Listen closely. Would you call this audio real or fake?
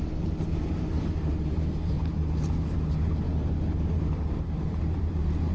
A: fake